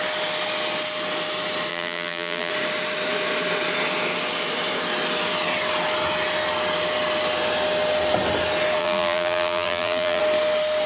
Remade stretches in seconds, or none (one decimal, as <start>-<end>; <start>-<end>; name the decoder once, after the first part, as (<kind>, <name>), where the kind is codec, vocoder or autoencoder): 1.7-2.5 (vocoder, BigVGAN v2); 8.8-10.2